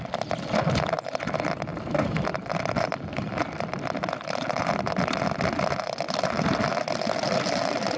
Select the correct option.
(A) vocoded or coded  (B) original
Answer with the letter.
B